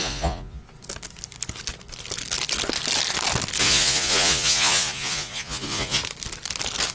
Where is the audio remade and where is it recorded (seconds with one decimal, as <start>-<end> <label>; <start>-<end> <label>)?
0.0-0.6 remade; 0.6-3.6 recorded; 3.6-6.0 remade; 6.0-6.9 recorded